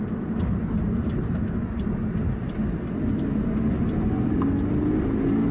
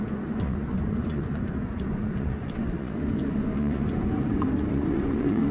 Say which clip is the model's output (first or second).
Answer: second